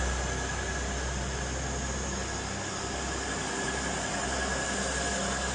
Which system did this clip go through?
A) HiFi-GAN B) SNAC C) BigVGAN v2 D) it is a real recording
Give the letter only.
D